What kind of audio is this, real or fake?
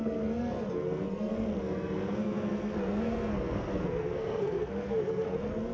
fake